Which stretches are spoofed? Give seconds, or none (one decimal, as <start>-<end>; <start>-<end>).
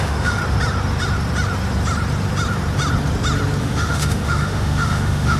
0.0-0.4; 3.6-5.4